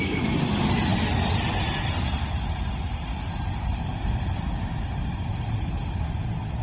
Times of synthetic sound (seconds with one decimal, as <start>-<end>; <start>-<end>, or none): none